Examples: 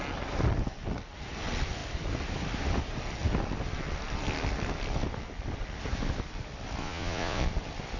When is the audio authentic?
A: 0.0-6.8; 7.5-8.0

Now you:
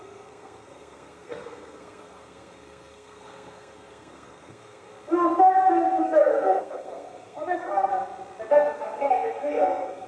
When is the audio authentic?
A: 4.9-6.0; 7.9-8.5

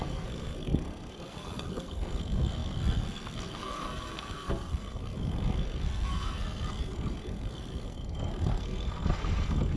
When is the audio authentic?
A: none

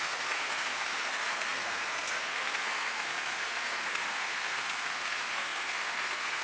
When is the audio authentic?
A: none

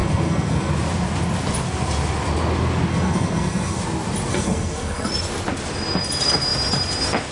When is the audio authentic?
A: 0.7-2.9; 3.8-4.3; 5.1-7.3

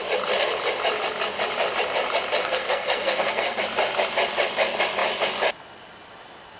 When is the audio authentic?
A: 0.0-2.4; 3.6-6.6

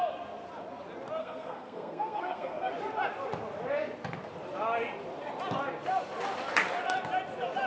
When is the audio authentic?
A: 0.0-1.2; 2.7-7.7